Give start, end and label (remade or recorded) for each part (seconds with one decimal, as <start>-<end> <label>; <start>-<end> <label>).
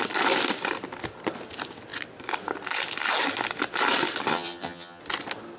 0.0-4.3 recorded; 4.3-5.0 remade; 5.0-5.6 recorded